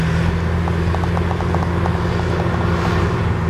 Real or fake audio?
real